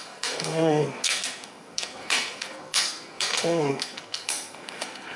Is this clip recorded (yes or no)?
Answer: no